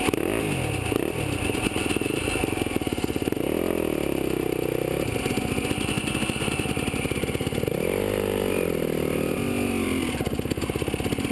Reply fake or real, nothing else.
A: real